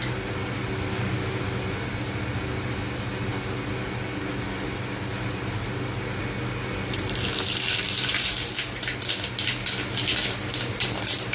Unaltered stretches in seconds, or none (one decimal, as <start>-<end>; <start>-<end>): 0.0-11.3